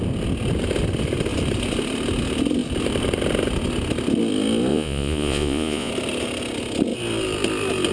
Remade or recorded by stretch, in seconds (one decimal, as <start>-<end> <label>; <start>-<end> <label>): 0.0-4.7 recorded; 4.7-5.9 remade; 5.9-7.9 recorded